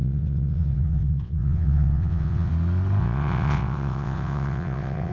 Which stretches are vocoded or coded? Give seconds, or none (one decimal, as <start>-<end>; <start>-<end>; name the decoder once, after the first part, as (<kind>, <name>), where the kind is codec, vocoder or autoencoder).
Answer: 0.0-2.5 (vocoder, WaveNeXt); 3.0-5.1